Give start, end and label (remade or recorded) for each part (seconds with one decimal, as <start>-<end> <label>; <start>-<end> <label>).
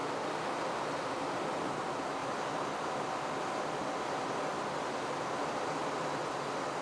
0.0-1.4 recorded; 1.4-2.2 remade; 2.2-4.7 recorded; 4.7-6.8 remade